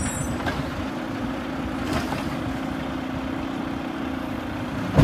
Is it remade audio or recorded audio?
recorded